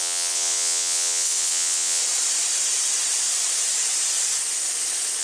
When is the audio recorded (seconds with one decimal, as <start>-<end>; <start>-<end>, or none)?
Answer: 2.0-5.2